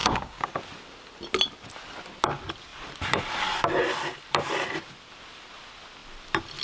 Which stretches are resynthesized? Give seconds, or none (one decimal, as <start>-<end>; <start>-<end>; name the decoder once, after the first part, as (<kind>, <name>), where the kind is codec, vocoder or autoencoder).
0.0-0.5 (codec, DAC)